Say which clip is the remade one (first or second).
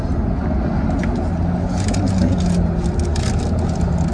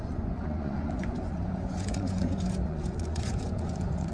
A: second